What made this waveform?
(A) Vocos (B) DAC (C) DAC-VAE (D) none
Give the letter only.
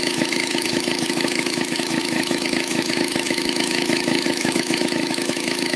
C